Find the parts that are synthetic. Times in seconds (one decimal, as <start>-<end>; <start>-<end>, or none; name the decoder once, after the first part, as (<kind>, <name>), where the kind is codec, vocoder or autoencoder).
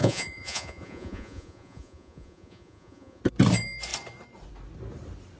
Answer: 0.0-3.2 (vocoder, Vocos)